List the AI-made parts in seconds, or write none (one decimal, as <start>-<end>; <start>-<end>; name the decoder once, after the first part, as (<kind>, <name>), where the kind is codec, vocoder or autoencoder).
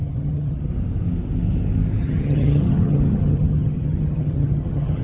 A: 0.0-0.7 (vocoder, HiFi-GAN); 2.0-5.0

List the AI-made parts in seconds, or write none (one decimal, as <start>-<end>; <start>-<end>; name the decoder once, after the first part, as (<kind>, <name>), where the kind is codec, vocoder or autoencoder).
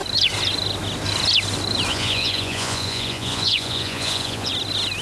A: 1.9-4.5 (vocoder, Vocos)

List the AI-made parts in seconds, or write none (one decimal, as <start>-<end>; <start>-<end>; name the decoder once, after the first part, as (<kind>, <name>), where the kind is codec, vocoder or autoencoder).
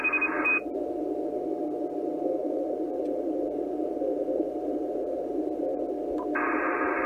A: 2.4-5.8 (vocoder, BigVGAN v2)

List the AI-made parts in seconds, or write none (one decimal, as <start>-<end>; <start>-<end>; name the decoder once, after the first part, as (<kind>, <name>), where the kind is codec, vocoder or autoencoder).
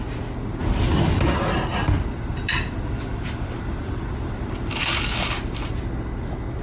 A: 1.7-5.7 (vocoder, BigVGAN v2)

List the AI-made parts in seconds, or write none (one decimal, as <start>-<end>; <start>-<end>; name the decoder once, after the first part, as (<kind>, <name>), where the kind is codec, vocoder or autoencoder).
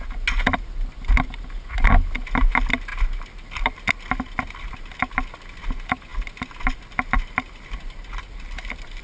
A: none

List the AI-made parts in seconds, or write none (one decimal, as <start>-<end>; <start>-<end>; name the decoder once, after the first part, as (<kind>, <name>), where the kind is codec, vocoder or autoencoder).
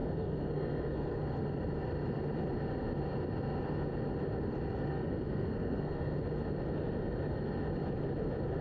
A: 0.0-1.3 (codec, SNAC); 4.9-6.2